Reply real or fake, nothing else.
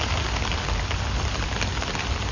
real